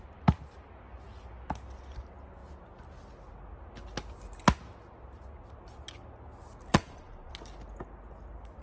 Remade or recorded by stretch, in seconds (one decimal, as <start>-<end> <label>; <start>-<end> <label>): 0.0-6.7 recorded; 6.7-7.3 remade; 7.3-8.6 recorded